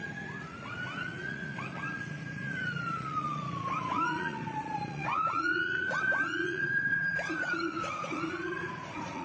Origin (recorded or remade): remade